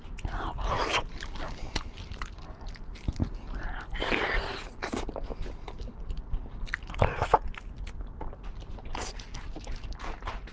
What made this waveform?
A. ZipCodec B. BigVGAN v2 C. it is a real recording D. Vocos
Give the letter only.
C